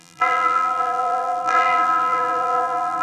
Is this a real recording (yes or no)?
no